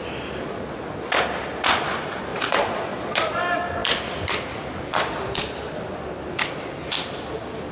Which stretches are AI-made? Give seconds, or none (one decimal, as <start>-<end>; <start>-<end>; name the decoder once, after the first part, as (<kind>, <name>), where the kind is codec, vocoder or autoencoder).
2.3-3.4 (vocoder, Vocos)